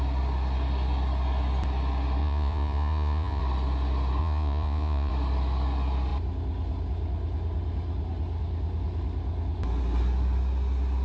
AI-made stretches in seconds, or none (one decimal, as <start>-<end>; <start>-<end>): 2.2-3.4; 4.2-5.1